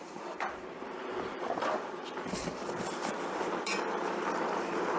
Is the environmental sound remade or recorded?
remade